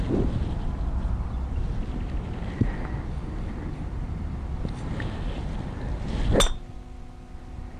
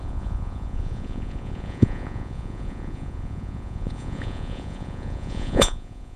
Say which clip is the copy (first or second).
second